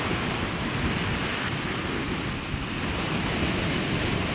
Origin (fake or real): real